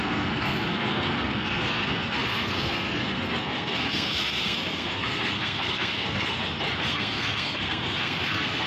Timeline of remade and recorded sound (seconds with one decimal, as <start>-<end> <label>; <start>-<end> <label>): 0.0-6.4 remade; 6.4-6.9 recorded; 6.9-8.7 remade